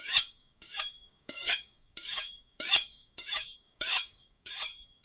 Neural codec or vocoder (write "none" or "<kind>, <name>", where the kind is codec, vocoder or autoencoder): codec, DAC